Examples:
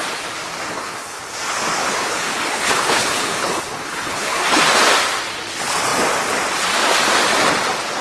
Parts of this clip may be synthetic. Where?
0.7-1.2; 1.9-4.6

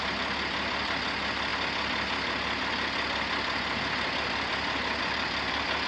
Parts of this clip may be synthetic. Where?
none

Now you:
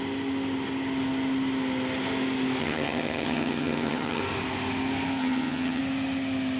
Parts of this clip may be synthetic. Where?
2.6-4.2; 5.2-5.8

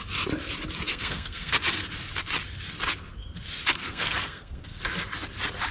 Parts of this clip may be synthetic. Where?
0.9-1.5; 3.8-4.8